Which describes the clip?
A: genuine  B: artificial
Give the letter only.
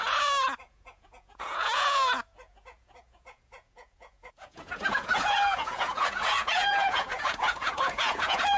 B